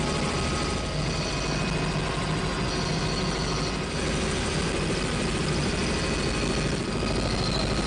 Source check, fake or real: real